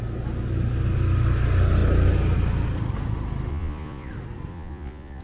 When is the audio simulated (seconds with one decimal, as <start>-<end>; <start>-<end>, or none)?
3.5-4.1; 4.5-5.2